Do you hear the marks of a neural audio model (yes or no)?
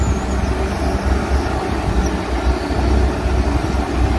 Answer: no